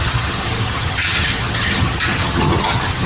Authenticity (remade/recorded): remade